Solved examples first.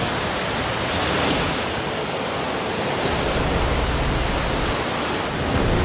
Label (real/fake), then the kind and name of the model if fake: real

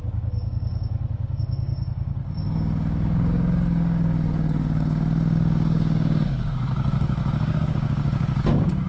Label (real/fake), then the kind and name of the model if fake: fake, codec, DAC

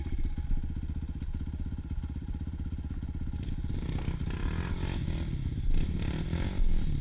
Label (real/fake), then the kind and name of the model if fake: real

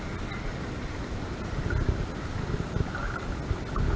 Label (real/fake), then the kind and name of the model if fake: real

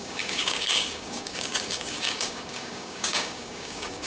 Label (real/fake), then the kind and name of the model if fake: fake, codec, DAC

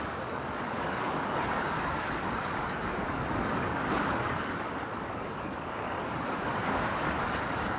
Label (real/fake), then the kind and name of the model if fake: fake, codec, DAC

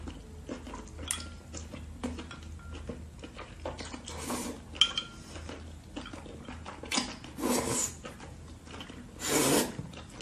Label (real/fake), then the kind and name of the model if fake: real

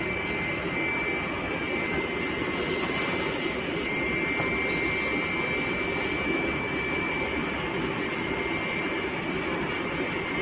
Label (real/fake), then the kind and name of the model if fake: real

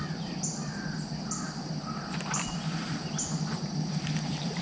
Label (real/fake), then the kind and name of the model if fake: real